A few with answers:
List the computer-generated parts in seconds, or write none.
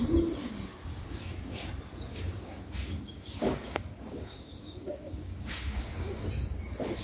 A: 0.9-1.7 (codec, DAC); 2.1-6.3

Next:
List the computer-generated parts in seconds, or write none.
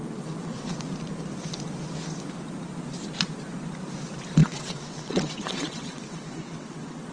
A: 0.0-0.7 (vocoder, WaveNeXt); 4.4-7.1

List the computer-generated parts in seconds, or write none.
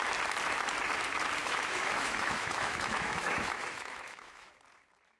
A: 1.4-4.5 (autoencoder, DAC-VAE)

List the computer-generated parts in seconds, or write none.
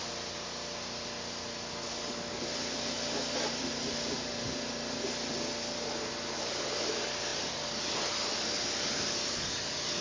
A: none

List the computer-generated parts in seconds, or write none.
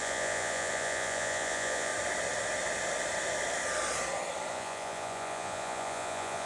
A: 0.0-1.9 (vocoder, Vocos); 4.5-6.5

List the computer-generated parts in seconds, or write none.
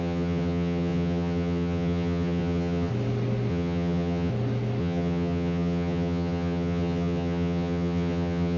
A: 0.0-2.9 (vocoder, HiFi-GAN); 3.5-4.3; 4.8-8.6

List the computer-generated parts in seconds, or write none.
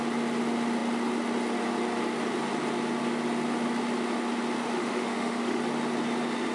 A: 4.6-5.6 (autoencoder, DAC-VAE)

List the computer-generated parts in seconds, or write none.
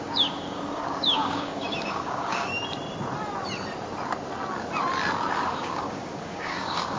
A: 0.0-2.5 (codec, DAC); 5.5-7.0